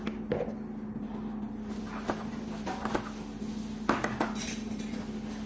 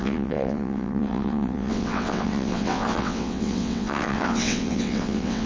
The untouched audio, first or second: first